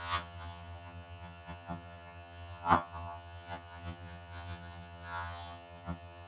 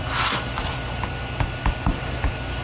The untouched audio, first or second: second